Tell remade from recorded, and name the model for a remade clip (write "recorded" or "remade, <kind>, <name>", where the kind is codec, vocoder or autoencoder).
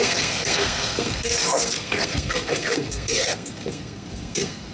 remade, codec, SNAC